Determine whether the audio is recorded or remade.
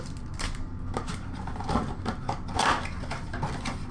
recorded